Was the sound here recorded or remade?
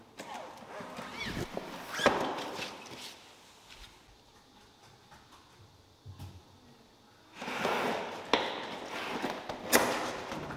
recorded